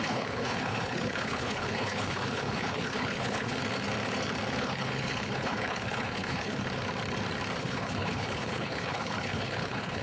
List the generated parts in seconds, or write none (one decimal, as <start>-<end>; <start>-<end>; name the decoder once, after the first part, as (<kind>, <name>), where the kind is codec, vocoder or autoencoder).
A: 0.0-3.6 (codec, HILCodec); 4.6-6.6; 7.6-10.0